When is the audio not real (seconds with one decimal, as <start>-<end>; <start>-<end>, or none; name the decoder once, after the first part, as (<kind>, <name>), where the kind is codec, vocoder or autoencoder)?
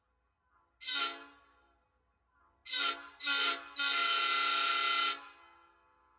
none